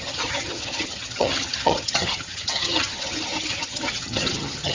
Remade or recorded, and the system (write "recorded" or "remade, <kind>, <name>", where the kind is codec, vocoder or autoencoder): remade, vocoder, HiFi-GAN